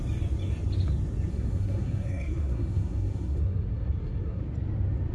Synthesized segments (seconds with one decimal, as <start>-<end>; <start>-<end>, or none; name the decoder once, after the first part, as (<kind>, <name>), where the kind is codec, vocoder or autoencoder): 1.3-4.4 (codec, SNAC)